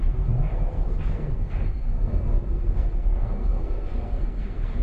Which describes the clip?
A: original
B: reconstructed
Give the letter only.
B